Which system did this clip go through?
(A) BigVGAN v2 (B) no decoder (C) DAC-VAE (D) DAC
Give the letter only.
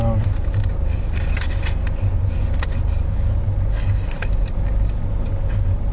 B